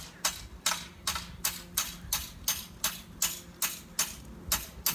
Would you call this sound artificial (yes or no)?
no